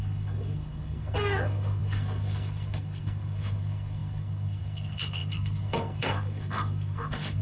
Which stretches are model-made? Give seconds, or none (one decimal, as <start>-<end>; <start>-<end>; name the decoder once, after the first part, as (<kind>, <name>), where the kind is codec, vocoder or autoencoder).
0.0-7.4 (codec, SNAC)